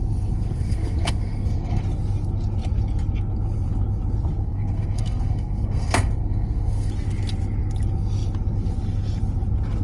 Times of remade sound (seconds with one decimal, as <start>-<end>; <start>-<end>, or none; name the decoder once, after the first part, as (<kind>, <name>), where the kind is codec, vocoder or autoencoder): 0.0-1.8 (codec, SNAC); 4.4-6.9